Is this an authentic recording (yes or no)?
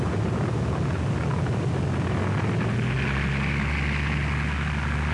yes